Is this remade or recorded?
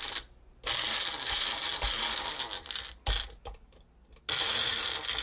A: recorded